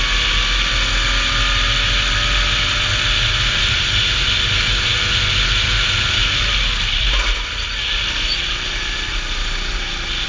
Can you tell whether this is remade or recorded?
recorded